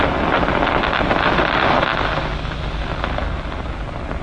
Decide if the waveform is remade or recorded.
recorded